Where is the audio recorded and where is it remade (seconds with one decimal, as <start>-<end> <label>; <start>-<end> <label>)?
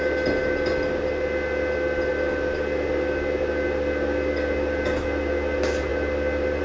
0.0-6.6 recorded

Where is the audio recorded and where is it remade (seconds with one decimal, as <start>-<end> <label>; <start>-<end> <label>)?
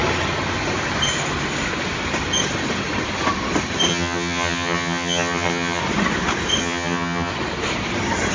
0.0-3.9 recorded; 3.9-5.8 remade; 5.8-6.6 recorded; 6.6-7.3 remade; 7.3-8.3 recorded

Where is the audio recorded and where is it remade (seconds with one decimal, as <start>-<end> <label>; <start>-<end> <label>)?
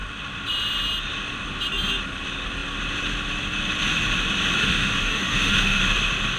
0.0-4.6 recorded; 4.6-5.8 remade; 5.8-6.4 recorded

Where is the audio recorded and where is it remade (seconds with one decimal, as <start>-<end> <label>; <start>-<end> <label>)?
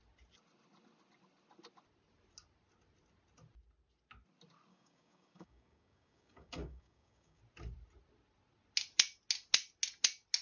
0.0-4.7 recorded; 4.7-7.4 remade; 7.4-10.4 recorded